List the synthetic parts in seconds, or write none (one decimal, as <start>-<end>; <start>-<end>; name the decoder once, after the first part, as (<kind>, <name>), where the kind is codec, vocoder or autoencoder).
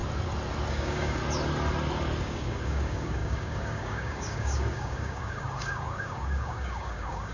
0.7-1.2 (codec, DAC); 2.2-7.3